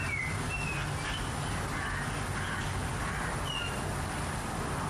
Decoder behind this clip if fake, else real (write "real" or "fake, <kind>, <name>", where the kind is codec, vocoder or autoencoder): real